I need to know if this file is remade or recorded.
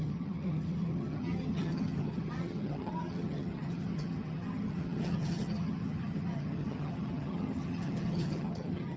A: remade